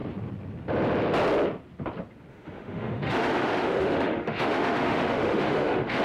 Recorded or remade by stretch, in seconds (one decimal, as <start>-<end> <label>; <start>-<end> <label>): 0.0-2.3 recorded; 2.3-6.0 remade